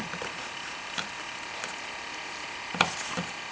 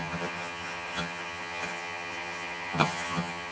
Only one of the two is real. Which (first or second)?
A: first